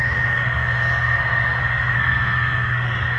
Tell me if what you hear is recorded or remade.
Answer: remade